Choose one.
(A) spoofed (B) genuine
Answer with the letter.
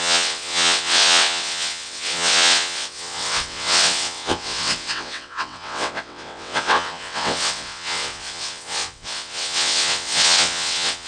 A